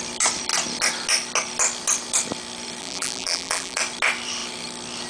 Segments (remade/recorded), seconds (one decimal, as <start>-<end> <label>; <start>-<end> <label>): 0.0-2.8 recorded; 2.8-3.8 remade; 3.8-5.1 recorded